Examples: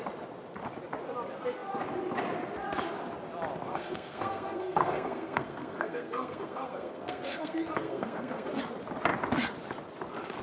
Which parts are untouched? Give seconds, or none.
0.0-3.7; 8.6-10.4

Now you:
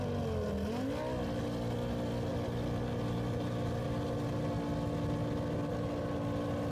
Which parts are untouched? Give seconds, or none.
0.0-6.7

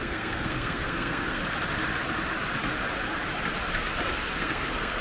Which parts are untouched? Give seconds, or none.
1.4-4.4

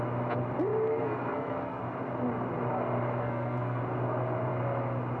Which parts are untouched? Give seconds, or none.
0.0-0.9; 1.8-3.2; 3.8-5.2